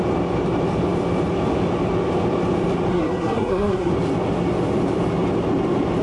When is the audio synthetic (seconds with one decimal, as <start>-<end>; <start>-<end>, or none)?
2.9-3.9